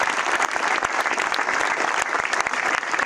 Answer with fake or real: real